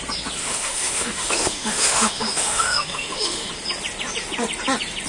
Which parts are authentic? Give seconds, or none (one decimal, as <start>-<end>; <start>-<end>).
0.0-0.4; 3.5-5.1